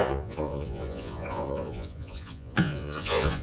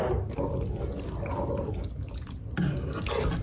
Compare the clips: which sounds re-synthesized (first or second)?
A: first